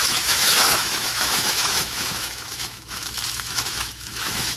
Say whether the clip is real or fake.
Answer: fake